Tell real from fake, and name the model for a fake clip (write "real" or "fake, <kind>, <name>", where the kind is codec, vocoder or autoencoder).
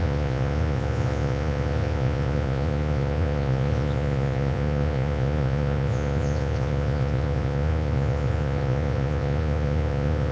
fake, vocoder, Vocos